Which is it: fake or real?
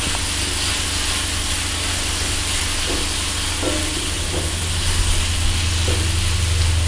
real